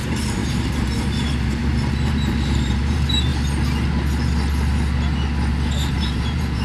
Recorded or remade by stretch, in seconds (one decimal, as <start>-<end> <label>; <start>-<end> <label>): 0.0-3.3 remade; 3.3-5.9 recorded; 5.9-6.6 remade